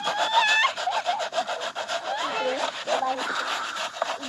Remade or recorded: remade